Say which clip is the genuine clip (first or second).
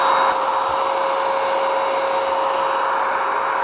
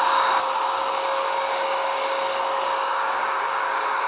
first